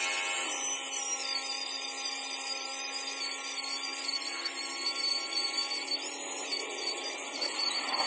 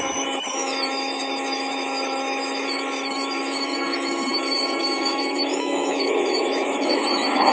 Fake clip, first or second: second